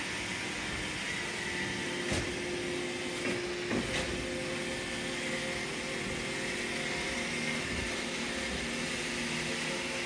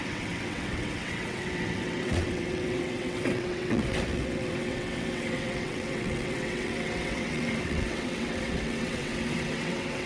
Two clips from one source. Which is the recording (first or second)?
first